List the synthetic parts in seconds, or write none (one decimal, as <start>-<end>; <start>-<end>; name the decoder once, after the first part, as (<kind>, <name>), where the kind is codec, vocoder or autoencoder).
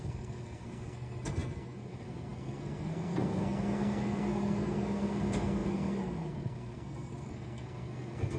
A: 0.0-8.4 (codec, SNAC)